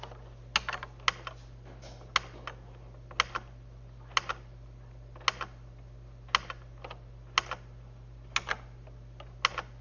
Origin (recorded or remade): recorded